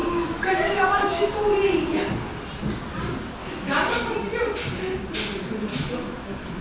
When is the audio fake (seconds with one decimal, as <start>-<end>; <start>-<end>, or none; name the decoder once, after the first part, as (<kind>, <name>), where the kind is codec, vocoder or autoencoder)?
0.0-1.2 (autoencoder, DAC-VAE); 3.4-3.9; 5.7-6.6